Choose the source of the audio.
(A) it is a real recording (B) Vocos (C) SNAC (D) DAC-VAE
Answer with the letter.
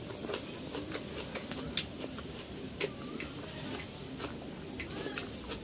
A